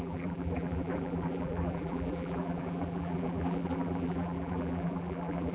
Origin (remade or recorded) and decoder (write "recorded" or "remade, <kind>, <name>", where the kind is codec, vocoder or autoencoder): remade, vocoder, BigVGAN v2